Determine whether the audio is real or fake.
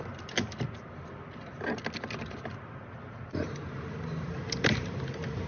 real